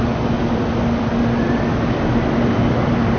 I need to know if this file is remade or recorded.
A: recorded